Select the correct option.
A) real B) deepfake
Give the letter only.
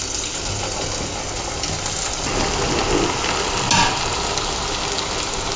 A